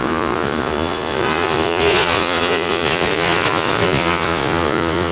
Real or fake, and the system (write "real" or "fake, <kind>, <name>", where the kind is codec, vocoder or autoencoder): fake, vocoder, Vocos